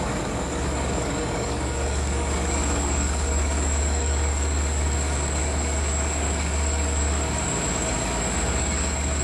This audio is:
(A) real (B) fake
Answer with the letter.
B